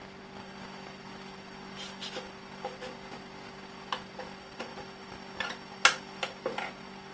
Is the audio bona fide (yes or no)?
yes